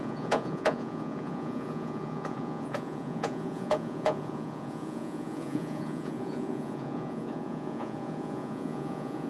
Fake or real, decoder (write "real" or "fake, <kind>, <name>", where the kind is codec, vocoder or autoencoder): fake, vocoder, Vocos